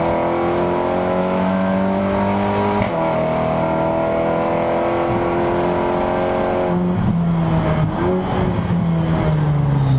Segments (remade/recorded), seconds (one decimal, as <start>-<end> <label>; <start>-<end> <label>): 0.0-1.2 recorded; 1.2-2.0 remade; 2.0-10.0 recorded